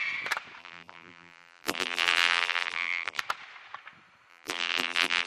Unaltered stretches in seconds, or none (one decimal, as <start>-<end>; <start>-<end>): 0.0-0.6; 3.2-4.3